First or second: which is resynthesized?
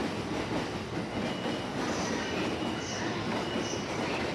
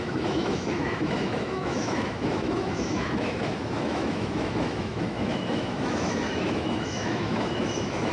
second